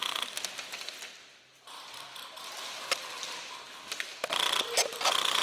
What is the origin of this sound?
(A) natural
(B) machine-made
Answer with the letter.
B